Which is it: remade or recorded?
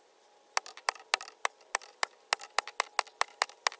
recorded